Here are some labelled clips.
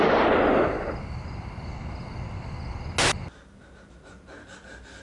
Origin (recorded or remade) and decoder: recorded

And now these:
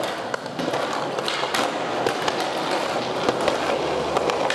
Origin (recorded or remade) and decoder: recorded